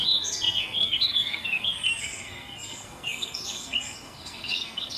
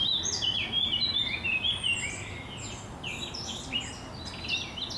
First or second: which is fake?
first